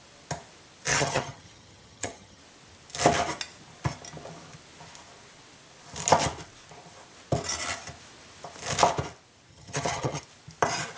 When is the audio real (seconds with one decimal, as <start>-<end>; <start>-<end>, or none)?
0.0-0.9; 2.4-9.5; 10.2-11.0